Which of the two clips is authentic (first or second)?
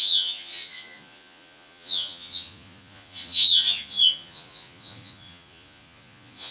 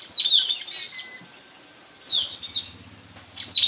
second